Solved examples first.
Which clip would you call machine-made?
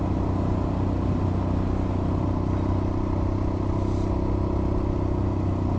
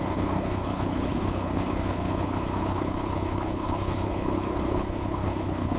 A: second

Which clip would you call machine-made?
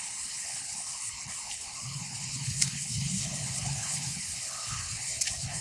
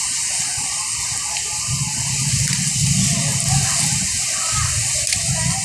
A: first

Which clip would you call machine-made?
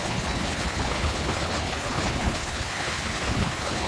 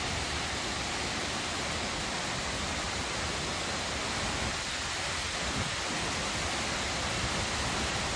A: first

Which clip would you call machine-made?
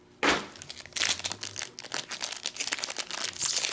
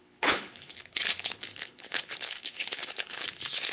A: second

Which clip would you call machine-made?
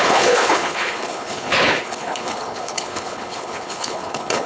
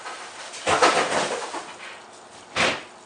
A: first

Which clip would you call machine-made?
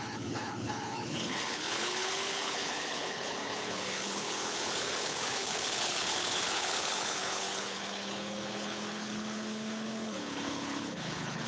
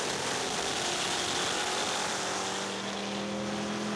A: first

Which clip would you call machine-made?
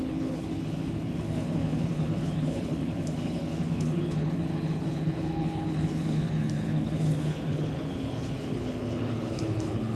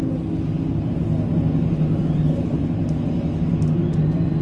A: first